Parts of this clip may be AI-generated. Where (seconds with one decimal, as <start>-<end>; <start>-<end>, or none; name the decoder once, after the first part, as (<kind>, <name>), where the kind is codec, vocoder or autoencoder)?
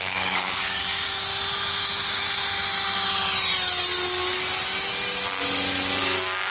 0.0-1.3 (codec, DAC); 1.8-2.4; 6.0-6.5